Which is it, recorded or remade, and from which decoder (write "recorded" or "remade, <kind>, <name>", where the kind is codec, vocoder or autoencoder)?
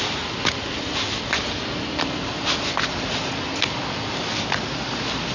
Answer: recorded